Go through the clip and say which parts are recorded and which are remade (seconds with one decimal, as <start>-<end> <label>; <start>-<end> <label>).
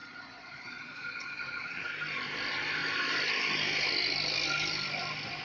0.0-1.8 remade; 1.8-5.4 recorded